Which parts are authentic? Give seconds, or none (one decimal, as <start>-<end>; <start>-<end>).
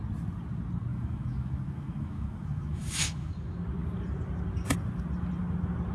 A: 0.0-0.9; 3.3-5.9